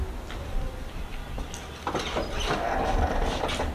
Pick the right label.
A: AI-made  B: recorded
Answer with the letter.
B